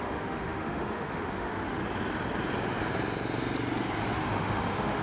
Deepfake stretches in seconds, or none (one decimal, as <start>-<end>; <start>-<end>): 0.0-1.8; 4.0-5.0